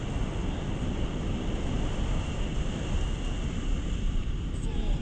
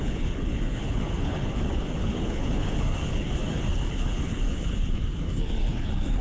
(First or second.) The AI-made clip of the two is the second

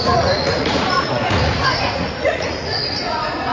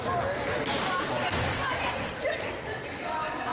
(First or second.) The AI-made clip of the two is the first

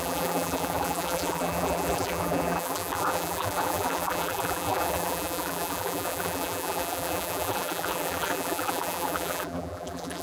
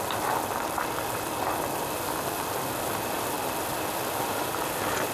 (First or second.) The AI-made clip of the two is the first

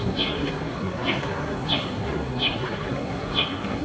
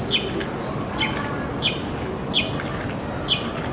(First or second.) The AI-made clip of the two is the first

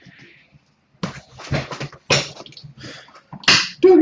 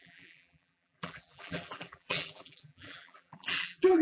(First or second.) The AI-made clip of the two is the second